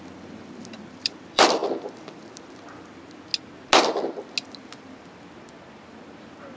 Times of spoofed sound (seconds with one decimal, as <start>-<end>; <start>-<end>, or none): 0.0-1.6; 2.3-3.3